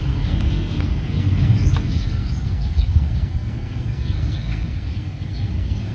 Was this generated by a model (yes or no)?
yes